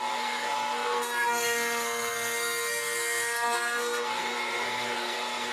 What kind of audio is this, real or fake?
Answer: fake